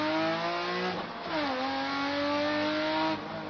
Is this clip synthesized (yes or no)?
no